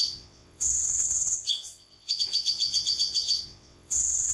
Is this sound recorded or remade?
remade